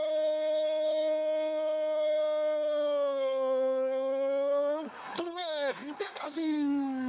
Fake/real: fake